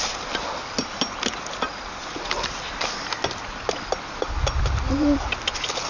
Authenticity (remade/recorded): recorded